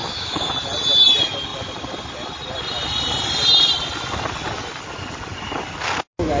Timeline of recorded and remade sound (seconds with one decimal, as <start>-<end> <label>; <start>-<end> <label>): 0.0-0.5 remade; 0.5-6.4 recorded